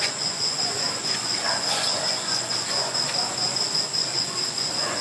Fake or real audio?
fake